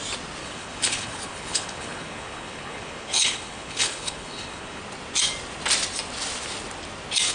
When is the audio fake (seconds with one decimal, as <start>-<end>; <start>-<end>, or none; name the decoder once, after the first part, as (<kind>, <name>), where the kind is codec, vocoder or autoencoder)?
0.4-4.8 (codec, HILCodec)